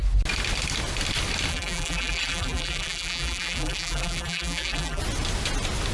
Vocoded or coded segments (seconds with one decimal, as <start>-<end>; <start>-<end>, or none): 1.5-5.0